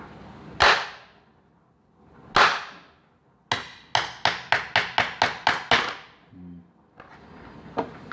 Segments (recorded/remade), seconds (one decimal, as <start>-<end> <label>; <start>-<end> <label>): 0.0-8.1 recorded